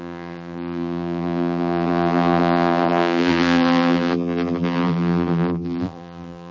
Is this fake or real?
fake